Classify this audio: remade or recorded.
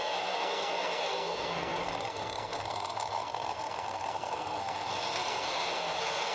remade